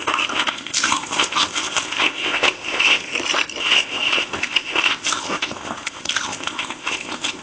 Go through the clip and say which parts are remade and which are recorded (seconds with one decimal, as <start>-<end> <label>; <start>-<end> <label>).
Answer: 0.0-3.1 remade; 3.1-3.6 recorded; 3.6-7.4 remade